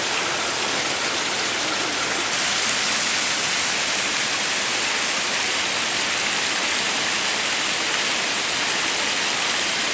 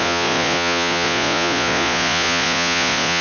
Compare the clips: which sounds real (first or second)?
first